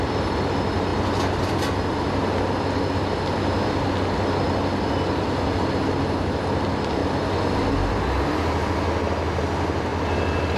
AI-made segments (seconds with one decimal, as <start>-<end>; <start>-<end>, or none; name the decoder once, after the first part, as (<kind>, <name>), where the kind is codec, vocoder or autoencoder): none